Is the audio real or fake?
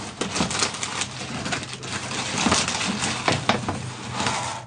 real